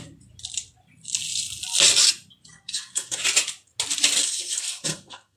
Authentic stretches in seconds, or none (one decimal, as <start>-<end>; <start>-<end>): 0.0-2.5; 3.2-4.2